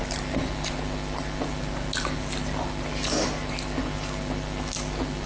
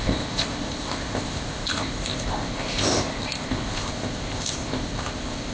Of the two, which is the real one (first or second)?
first